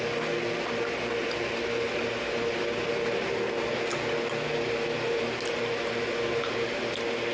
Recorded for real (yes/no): yes